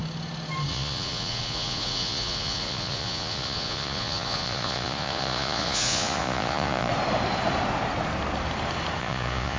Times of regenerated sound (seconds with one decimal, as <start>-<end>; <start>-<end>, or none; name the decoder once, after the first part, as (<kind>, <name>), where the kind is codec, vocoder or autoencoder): 0.7-6.9 (vocoder, Vocos); 9.0-9.6